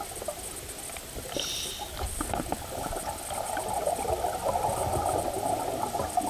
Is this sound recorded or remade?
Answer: recorded